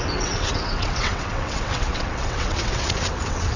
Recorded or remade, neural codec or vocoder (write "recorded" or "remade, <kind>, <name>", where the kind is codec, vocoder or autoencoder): remade, vocoder, WaveNeXt